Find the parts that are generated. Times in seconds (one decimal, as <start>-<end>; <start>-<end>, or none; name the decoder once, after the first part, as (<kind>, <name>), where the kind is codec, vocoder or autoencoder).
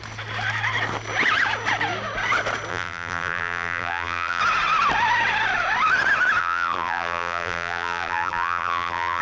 2.7-4.4 (vocoder, BigVGAN v2); 6.4-9.2